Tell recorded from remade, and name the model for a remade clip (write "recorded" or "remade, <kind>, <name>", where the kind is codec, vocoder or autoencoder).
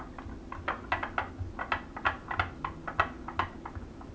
recorded